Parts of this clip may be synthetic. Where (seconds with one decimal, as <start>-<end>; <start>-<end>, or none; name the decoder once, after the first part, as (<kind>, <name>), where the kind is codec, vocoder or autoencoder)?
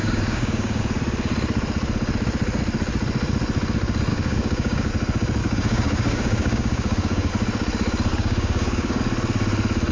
0.0-0.8 (codec, DAC); 4.1-4.9; 5.4-7.3; 8.1-9.0